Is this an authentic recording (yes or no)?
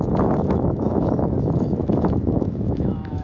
no